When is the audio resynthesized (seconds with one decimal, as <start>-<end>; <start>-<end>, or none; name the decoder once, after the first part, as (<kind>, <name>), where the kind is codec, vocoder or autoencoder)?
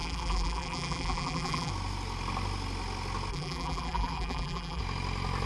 0.0-1.7 (vocoder, BigVGAN v2); 3.3-4.8